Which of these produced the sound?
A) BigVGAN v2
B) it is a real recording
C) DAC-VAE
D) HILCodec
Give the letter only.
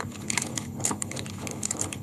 D